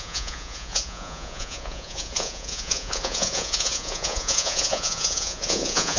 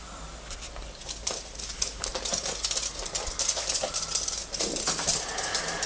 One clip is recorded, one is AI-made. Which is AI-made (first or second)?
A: first